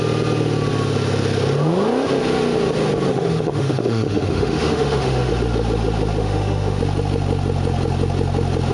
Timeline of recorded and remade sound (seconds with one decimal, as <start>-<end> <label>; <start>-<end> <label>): 0.0-3.1 recorded; 3.1-5.3 remade; 5.3-6.2 recorded; 6.2-6.8 remade; 6.8-8.7 recorded